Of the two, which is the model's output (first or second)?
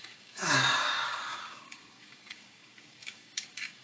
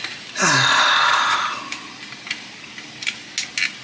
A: first